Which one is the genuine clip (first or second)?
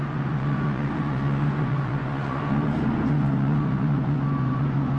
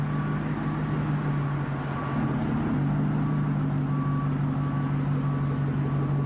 second